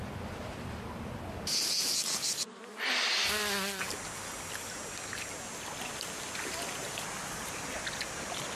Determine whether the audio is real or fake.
real